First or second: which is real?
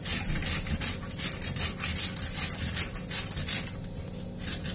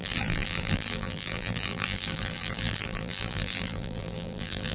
first